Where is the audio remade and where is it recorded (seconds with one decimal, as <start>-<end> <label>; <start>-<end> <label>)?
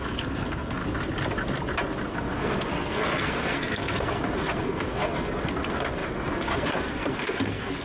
0.0-0.8 remade; 0.8-2.1 recorded; 2.1-7.8 remade